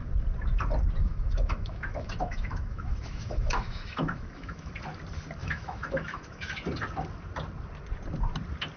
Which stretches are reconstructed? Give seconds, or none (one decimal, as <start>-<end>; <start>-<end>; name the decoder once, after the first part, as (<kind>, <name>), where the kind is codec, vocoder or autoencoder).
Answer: 1.0-4.7 (autoencoder, DAC-VAE); 5.4-6.5

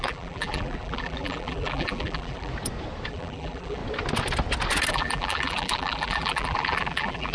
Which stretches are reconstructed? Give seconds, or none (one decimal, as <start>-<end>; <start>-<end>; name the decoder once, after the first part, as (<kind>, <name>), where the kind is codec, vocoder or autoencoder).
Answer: 0.0-2.5 (vocoder, BigVGAN v2); 3.1-3.8; 4.9-7.3

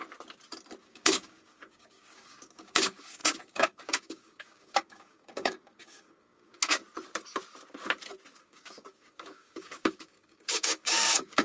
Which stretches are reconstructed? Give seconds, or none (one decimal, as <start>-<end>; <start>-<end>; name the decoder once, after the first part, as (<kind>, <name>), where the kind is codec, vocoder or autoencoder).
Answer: 0.8-6.8 (codec, DAC); 8.4-11.4

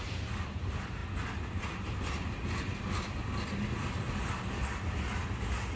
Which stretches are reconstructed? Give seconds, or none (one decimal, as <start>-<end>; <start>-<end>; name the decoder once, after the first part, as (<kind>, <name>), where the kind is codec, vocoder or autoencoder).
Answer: none

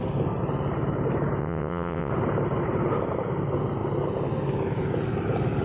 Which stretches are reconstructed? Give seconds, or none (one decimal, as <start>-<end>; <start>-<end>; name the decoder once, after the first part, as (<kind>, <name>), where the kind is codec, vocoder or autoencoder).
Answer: 1.4-2.1 (vocoder, WaveNeXt)

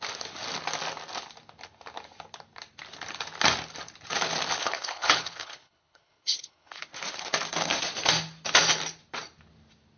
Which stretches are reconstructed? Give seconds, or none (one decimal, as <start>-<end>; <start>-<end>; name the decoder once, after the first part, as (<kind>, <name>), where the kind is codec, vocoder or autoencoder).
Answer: 4.6-6.8 (codec, HILCodec)

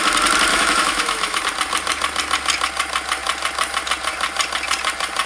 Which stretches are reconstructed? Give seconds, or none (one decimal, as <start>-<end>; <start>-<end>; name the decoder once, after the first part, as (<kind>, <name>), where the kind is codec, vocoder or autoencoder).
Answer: 0.5-1.4 (autoencoder, DAC-VAE)